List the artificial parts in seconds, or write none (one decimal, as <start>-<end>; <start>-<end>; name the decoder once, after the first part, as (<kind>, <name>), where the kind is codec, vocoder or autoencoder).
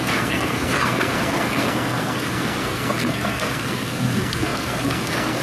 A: 0.0-5.4 (codec, SNAC)